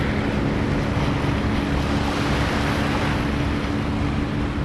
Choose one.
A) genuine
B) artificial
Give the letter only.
A